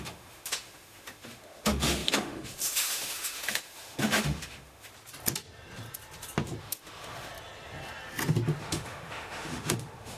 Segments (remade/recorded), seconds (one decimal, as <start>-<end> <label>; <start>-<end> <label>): 0.0-4.9 remade; 4.9-6.6 recorded; 6.6-7.3 remade; 7.3-8.6 recorded; 8.6-10.2 remade